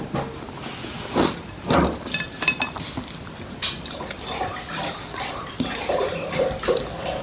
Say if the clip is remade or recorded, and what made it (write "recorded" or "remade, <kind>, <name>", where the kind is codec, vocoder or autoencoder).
recorded